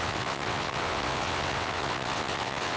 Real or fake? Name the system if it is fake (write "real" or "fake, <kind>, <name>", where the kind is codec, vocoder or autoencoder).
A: fake, vocoder, WaveNeXt